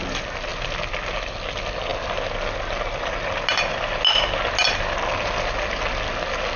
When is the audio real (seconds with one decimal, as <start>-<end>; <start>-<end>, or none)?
0.0-6.6